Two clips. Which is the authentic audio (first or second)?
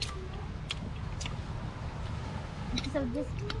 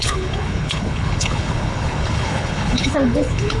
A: first